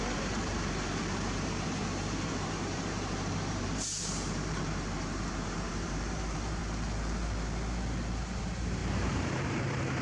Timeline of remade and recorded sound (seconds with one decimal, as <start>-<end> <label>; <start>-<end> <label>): 0.0-6.6 remade; 6.6-8.4 recorded; 8.4-10.0 remade